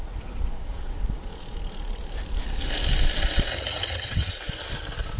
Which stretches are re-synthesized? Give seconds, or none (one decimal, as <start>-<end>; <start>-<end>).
3.5-4.3